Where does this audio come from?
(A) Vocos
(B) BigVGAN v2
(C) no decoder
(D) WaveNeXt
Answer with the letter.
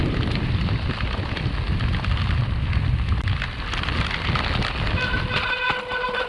C